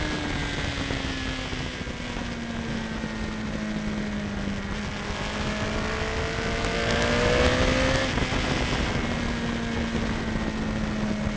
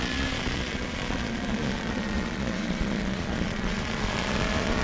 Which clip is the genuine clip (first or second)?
first